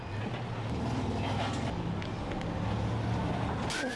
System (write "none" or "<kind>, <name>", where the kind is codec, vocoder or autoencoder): none